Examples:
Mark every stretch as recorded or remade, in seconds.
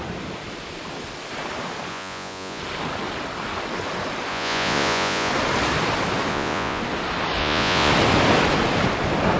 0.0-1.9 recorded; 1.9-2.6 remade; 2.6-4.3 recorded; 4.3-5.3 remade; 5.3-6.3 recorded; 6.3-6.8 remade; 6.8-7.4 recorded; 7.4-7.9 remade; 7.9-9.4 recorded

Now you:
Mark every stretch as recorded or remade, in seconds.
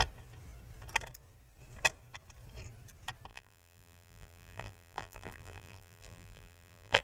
0.0-3.3 recorded; 3.3-7.0 remade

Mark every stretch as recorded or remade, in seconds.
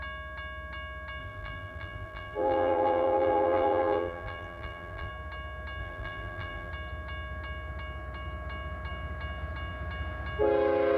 0.0-1.2 recorded; 1.2-5.1 remade; 5.1-5.8 recorded; 5.8-6.7 remade; 6.7-11.0 recorded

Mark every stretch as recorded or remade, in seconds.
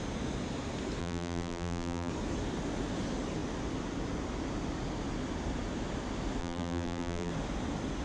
0.0-1.0 recorded; 1.0-2.1 remade; 2.1-6.4 recorded; 6.4-7.3 remade; 7.3-8.0 recorded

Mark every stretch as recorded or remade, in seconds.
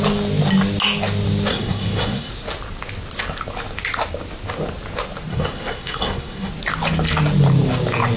0.0-1.5 recorded; 1.5-2.3 remade; 2.3-5.3 recorded; 5.3-6.5 remade; 6.5-8.2 recorded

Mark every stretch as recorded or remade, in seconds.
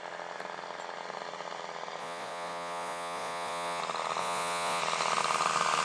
0.0-2.0 recorded; 2.0-3.8 remade; 3.8-4.2 recorded; 4.2-4.8 remade; 4.8-5.8 recorded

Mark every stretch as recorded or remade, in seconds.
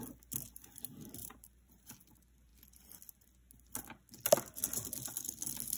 0.0-1.2 recorded; 1.2-1.9 remade; 1.9-5.8 recorded